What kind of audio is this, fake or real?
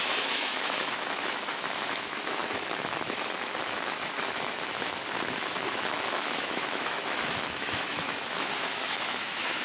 fake